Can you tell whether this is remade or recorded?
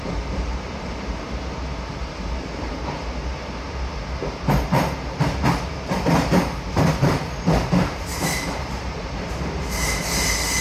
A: remade